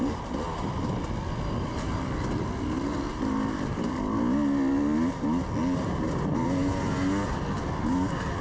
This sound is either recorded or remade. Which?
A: recorded